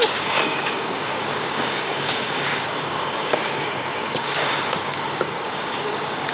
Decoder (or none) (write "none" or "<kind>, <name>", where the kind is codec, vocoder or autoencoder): codec, DAC